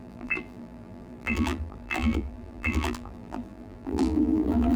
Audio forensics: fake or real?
fake